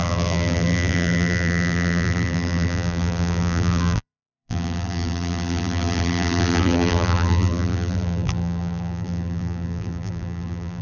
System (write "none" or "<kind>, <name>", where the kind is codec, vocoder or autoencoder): vocoder, BigVGAN v2